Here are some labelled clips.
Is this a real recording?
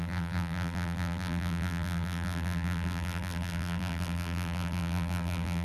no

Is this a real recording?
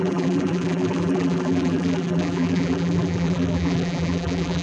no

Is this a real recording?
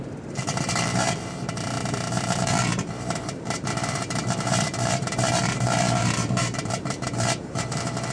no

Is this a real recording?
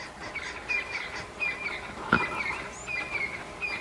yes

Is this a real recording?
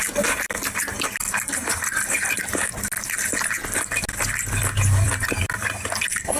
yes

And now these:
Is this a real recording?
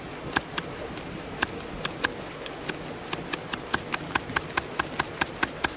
yes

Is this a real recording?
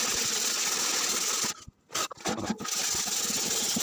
yes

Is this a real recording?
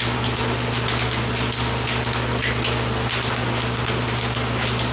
yes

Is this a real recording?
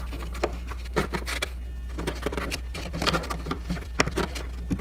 yes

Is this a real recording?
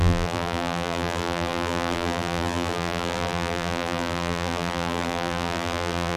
no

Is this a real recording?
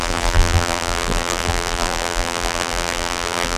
no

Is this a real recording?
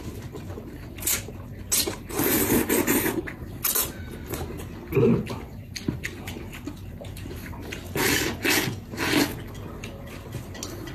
yes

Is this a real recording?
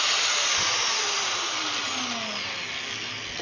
yes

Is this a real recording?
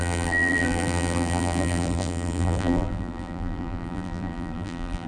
no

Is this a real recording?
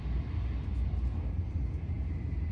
yes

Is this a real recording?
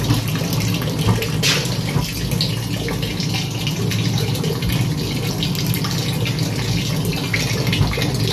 yes